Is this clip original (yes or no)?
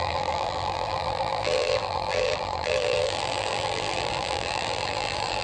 no